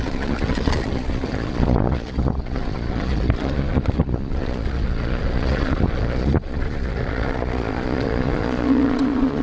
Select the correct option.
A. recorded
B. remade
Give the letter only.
B